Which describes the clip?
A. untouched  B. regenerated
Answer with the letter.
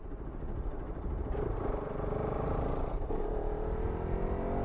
A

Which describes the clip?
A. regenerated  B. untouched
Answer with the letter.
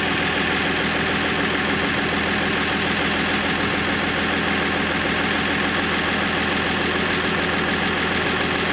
B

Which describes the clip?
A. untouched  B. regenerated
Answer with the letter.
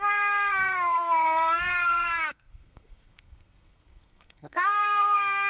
B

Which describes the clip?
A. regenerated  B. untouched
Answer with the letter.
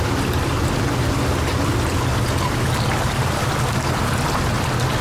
B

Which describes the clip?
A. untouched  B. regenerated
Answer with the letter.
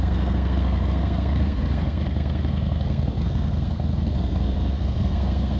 B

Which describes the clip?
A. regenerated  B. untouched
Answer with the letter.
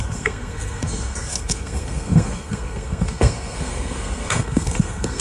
A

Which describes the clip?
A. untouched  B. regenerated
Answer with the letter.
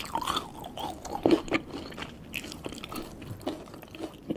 A